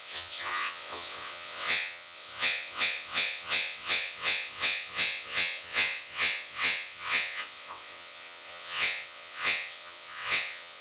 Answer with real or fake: fake